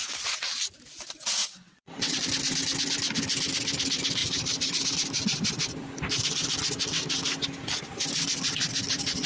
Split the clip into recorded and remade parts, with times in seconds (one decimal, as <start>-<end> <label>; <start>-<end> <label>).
0.0-0.5 remade; 0.5-1.4 recorded; 1.4-2.2 remade; 2.2-9.3 recorded